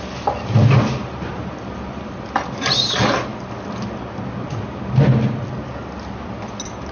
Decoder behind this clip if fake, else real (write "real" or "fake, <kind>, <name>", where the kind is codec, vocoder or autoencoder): real